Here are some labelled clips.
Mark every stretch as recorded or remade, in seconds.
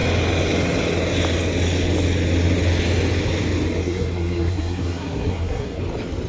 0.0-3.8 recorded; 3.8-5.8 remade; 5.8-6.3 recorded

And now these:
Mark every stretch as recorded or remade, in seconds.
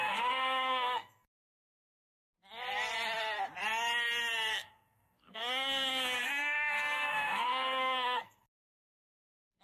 0.0-2.1 remade; 2.1-4.5 recorded; 4.5-9.6 remade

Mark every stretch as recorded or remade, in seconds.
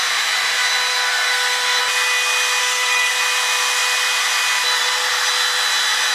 0.0-0.9 recorded; 0.9-1.8 remade; 1.8-2.6 recorded; 2.6-3.1 remade; 3.1-6.1 recorded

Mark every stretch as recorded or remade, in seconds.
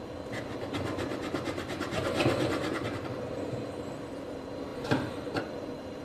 0.0-6.0 recorded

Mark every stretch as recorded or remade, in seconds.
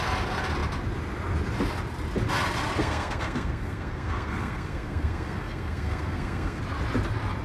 0.0-2.8 recorded; 2.8-6.6 remade; 6.6-7.4 recorded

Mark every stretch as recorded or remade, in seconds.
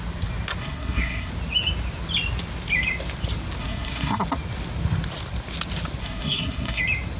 0.0-0.6 recorded; 0.6-1.3 remade; 1.3-3.6 recorded; 3.6-4.2 remade; 4.2-6.0 recorded; 6.0-6.8 remade; 6.8-7.2 recorded